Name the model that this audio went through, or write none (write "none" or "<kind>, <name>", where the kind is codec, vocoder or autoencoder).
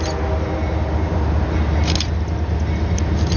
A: none